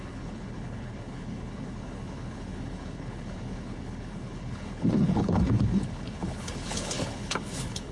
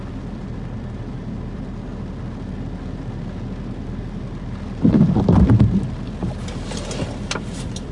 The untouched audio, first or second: second